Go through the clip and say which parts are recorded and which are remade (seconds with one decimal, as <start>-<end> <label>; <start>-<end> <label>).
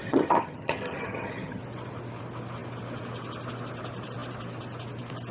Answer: 0.0-1.6 remade; 1.6-5.3 recorded